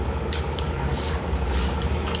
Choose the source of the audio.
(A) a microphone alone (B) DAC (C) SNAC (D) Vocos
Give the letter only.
B